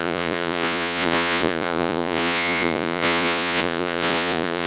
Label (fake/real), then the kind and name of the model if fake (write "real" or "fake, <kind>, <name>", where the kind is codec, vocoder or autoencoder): fake, vocoder, Vocos